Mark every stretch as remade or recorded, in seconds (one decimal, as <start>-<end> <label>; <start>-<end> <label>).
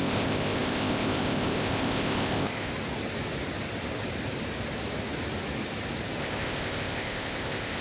0.0-2.7 remade; 2.7-6.2 recorded; 6.2-7.8 remade